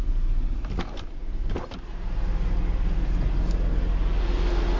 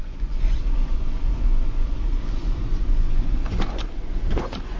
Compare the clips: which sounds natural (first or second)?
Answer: first